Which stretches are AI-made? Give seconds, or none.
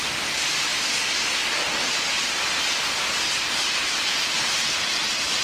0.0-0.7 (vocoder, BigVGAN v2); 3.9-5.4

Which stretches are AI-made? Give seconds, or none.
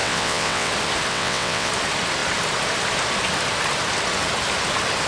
0.0-0.7 (vocoder, WaveNeXt); 1.1-1.7